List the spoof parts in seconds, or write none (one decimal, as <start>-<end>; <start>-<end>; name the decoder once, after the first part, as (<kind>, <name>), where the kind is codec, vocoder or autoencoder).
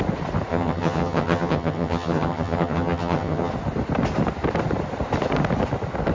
0.5-3.5 (vocoder, HiFi-GAN)